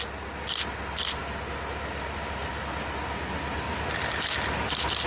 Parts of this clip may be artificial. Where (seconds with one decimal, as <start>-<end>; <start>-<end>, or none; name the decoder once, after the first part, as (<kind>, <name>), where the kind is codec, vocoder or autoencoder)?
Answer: none